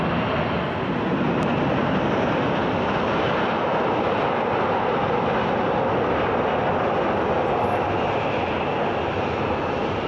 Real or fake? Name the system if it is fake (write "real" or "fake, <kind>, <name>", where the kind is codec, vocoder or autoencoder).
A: real